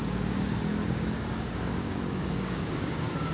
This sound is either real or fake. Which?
fake